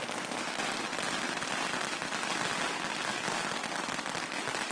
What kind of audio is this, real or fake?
real